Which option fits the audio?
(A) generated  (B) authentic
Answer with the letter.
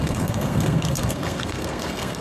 A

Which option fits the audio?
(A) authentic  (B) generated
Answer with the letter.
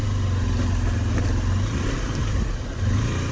A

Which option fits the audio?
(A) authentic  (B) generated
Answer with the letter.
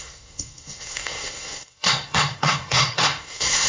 B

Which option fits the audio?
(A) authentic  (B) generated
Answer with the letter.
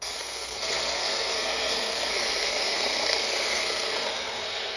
B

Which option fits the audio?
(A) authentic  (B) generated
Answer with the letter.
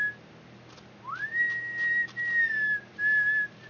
A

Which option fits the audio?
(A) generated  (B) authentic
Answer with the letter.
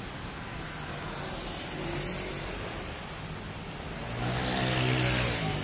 B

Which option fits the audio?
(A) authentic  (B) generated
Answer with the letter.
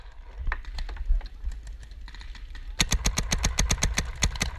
A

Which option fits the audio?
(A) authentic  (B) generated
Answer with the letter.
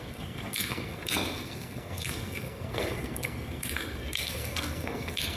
B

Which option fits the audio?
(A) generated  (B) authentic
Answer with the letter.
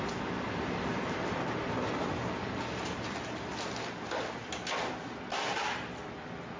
B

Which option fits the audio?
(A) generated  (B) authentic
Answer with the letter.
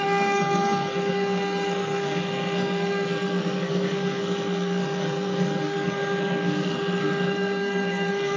A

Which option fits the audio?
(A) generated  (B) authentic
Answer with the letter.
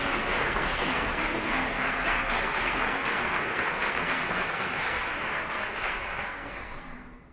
A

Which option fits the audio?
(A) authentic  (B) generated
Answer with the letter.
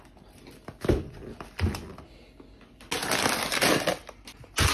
A